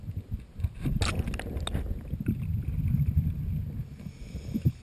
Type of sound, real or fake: real